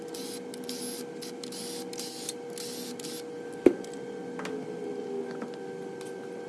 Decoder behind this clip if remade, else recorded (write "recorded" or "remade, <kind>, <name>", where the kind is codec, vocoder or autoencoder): recorded